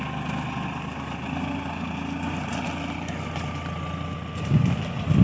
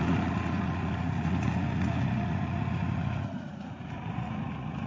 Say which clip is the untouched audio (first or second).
first